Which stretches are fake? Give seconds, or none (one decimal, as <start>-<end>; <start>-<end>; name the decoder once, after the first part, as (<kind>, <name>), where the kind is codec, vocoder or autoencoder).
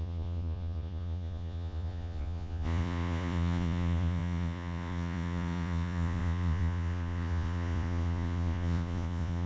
0.0-9.5 (vocoder, Vocos)